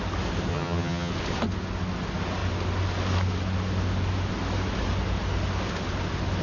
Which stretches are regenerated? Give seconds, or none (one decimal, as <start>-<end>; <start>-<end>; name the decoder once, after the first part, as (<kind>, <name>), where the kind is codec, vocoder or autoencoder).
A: 0.5-1.1 (vocoder, HiFi-GAN)